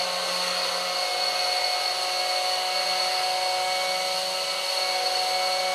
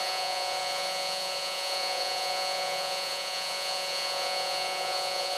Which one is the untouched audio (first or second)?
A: first